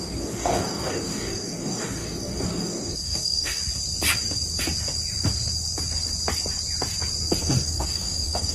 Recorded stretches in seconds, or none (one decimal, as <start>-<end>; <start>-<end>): 3.6-7.4